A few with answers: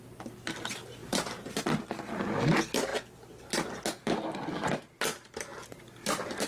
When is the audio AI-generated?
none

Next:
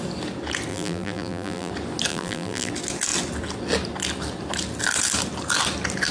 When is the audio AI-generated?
0.7-1.7; 2.1-2.7

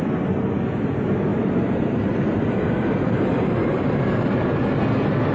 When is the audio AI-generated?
1.3-4.5

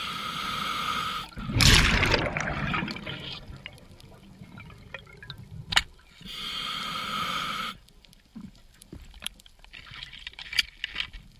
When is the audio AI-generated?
8.3-10.6

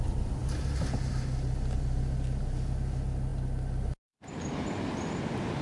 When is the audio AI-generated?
none